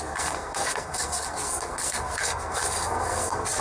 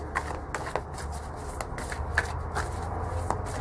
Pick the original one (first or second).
second